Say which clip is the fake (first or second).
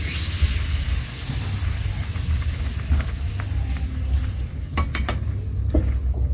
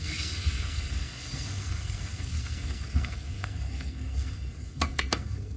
second